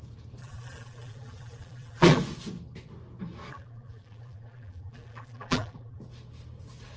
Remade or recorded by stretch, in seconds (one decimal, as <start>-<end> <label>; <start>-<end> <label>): 0.0-0.4 recorded; 0.4-2.2 remade; 2.2-3.5 recorded; 3.5-6.0 remade; 6.0-7.0 recorded